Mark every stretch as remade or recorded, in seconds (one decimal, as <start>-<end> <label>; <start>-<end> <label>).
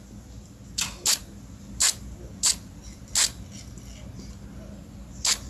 0.0-5.5 recorded